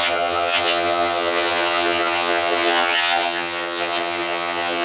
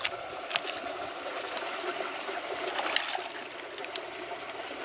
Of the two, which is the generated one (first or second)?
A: first